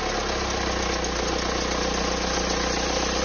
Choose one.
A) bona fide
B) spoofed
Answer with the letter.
A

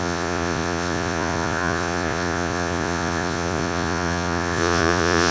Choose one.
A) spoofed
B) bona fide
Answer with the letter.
A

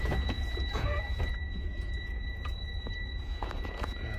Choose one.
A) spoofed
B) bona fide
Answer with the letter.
A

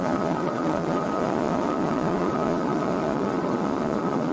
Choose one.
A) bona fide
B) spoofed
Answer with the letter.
B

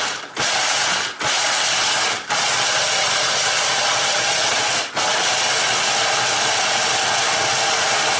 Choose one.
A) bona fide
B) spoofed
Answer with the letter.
A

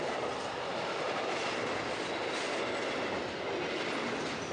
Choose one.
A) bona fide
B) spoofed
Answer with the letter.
A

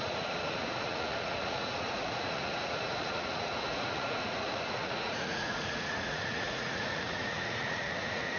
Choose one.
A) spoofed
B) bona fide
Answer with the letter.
A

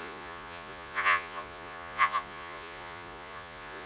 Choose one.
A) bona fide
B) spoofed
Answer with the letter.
B